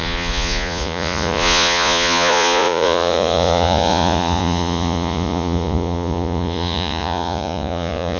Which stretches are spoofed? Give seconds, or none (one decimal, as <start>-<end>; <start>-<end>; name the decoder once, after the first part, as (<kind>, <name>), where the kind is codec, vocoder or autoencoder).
0.0-8.2 (vocoder, Vocos)

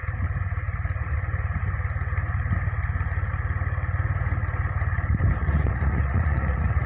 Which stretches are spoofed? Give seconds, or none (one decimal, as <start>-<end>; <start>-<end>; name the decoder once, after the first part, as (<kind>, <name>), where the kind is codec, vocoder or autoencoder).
5.4-6.9 (vocoder, Vocos)

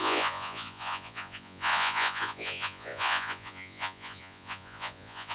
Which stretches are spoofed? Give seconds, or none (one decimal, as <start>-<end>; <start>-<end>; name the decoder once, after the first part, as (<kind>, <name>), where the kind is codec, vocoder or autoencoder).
0.0-5.3 (vocoder, Vocos)